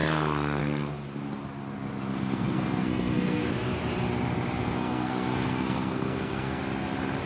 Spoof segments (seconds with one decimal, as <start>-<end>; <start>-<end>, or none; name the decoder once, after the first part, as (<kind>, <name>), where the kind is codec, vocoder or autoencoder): 0.0-0.6 (codec, SNAC); 2.1-3.5; 4.6-6.6